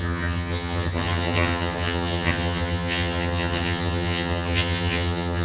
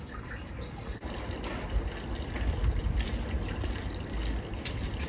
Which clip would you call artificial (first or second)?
first